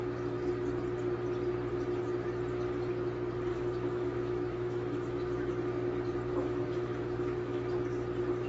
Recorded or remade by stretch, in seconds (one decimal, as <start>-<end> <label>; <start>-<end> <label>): 0.0-3.5 recorded; 3.5-5.5 remade; 5.5-6.3 recorded; 6.3-7.8 remade; 7.8-8.5 recorded